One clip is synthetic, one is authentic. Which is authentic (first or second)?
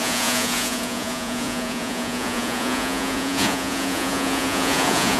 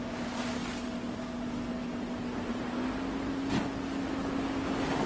second